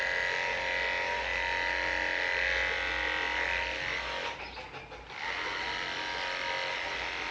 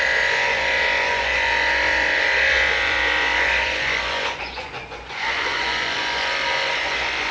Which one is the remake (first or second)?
second